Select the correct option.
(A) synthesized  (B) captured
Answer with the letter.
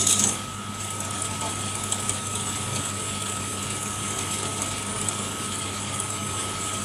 A